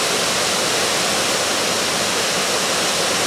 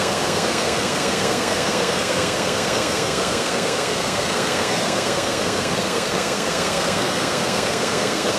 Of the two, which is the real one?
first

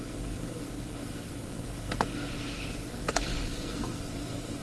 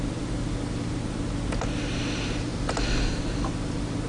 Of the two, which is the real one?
second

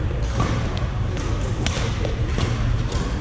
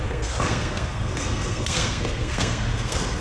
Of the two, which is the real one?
first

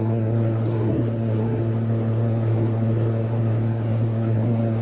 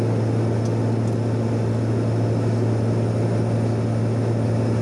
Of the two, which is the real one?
second